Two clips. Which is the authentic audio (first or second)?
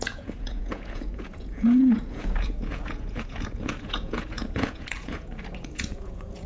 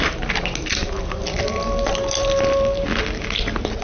second